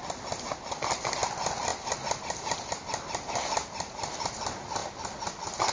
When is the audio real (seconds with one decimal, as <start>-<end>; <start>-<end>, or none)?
0.0-5.7